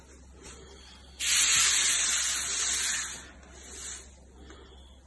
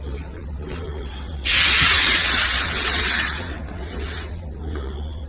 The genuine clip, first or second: first